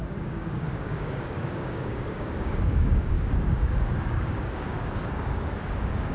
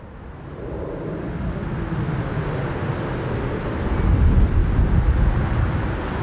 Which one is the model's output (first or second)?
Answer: first